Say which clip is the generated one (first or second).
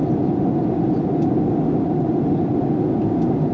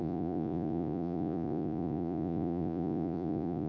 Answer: second